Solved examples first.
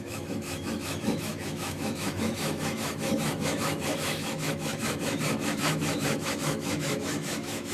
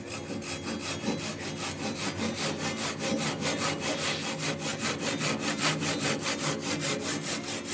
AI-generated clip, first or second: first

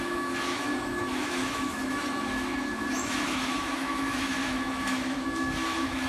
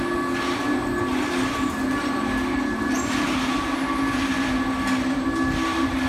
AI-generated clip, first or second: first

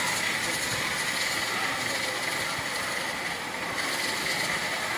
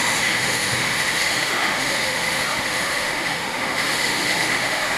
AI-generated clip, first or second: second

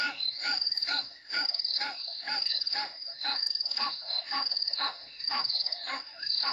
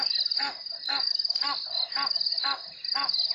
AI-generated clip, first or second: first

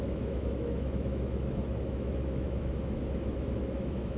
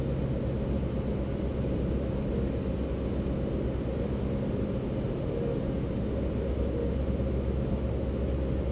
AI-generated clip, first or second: first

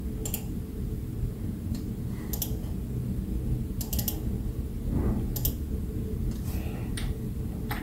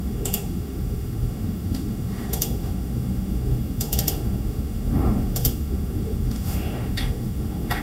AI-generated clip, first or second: second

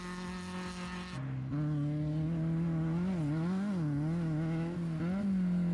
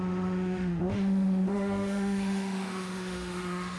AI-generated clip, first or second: second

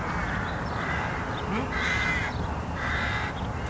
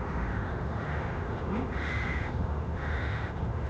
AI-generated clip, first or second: second